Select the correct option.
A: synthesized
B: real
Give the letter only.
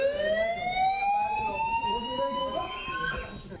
B